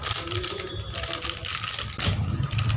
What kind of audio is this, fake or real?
real